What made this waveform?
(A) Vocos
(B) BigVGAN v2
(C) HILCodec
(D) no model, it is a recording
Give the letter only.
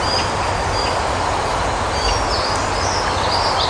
D